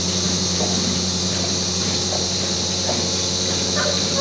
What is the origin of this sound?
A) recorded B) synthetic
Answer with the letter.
B